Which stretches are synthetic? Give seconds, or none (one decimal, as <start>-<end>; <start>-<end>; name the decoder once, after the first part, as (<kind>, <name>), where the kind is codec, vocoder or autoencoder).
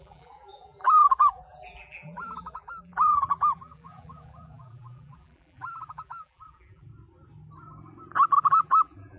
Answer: 0.0-6.9 (vocoder, BigVGAN v2); 8.5-9.2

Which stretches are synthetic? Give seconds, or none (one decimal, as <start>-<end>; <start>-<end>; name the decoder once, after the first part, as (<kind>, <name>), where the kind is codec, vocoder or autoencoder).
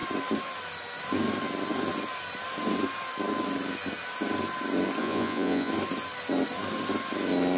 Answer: 5.0-5.7 (vocoder, Vocos)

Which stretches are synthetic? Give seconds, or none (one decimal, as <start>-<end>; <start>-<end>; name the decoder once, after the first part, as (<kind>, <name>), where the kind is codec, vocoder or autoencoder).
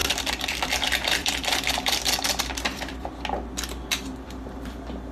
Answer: 0.0-3.1 (vocoder, BigVGAN v2)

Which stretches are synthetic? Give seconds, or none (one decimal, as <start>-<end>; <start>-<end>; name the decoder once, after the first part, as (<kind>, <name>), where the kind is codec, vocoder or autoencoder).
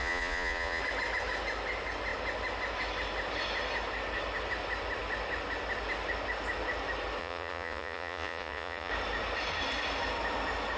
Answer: 0.0-0.8 (vocoder, Vocos); 7.2-8.9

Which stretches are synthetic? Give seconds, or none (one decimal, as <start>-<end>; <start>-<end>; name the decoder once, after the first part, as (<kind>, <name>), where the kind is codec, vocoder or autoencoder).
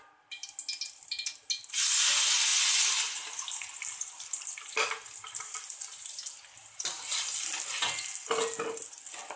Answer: none